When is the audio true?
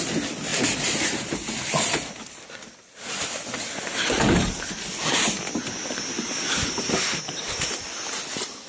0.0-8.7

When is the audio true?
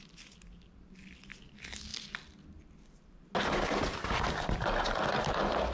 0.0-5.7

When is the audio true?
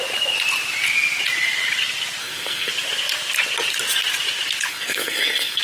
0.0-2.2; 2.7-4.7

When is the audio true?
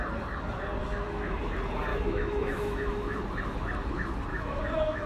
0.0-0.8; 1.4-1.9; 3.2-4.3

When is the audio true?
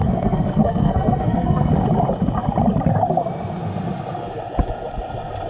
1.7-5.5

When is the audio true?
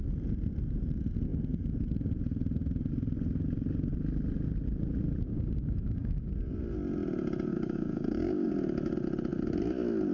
0.0-5.3; 6.3-7.5; 8.5-10.1